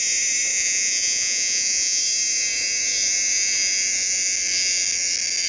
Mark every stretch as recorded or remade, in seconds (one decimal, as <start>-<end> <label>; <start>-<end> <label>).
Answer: 0.0-0.5 recorded; 0.5-2.0 remade; 2.0-5.5 recorded